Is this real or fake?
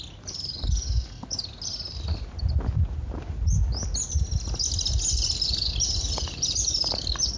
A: real